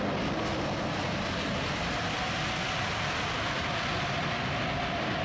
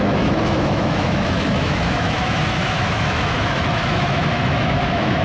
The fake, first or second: second